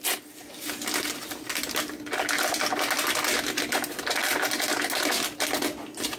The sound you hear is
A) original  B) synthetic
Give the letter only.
A